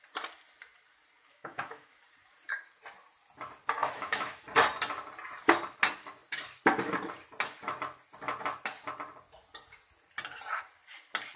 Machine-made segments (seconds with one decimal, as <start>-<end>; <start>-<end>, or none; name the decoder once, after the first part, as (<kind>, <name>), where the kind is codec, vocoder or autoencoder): 1.3-2.0 (autoencoder, DAC-VAE); 3.8-4.4